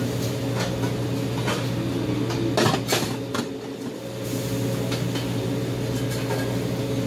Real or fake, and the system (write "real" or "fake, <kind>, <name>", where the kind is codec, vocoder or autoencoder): real